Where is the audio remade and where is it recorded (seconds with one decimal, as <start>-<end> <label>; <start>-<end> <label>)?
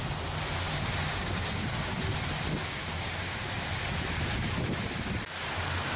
0.0-1.2 recorded; 1.2-2.0 remade; 2.0-2.8 recorded; 2.8-3.5 remade; 3.5-6.0 recorded